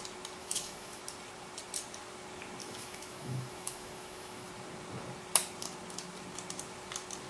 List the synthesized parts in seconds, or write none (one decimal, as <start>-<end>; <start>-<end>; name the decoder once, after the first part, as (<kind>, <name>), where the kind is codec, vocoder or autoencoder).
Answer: 0.4-1.0 (autoencoder, DAC-VAE); 2.6-4.5